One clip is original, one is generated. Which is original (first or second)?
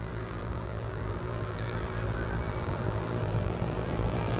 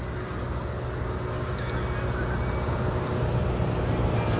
second